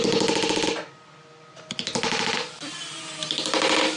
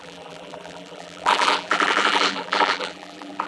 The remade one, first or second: second